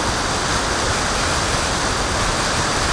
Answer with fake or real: real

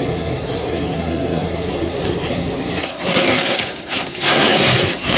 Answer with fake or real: fake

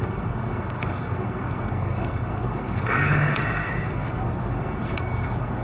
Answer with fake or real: fake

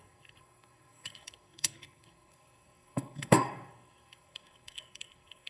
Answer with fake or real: fake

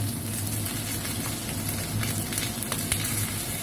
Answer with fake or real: real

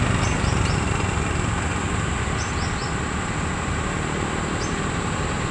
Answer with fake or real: real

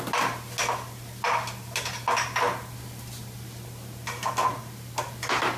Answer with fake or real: real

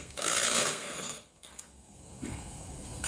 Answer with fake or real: fake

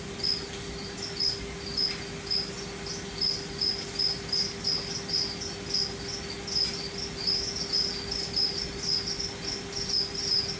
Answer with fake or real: real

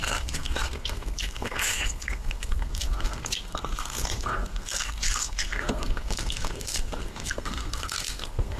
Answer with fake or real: fake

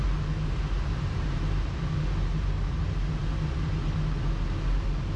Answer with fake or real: real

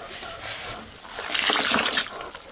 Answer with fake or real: real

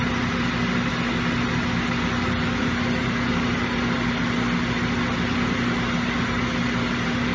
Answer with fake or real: real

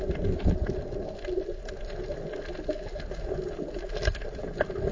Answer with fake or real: real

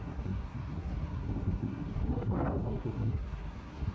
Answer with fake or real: fake